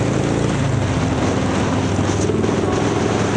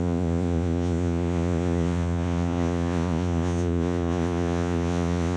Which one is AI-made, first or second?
second